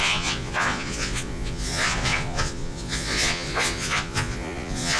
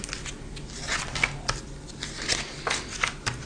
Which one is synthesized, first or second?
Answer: first